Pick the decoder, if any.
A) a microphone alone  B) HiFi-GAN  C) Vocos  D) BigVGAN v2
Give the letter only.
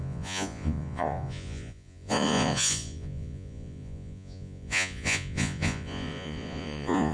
C